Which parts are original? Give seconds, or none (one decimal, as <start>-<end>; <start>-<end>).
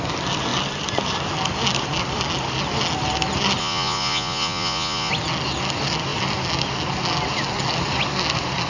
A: 0.0-3.6; 5.1-8.7